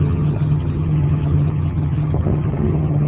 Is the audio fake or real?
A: fake